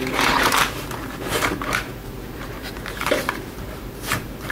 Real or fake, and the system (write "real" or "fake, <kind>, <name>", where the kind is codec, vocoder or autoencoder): fake, vocoder, BigVGAN v2